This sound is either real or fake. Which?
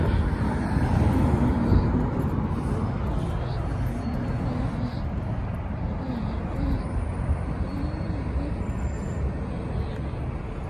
real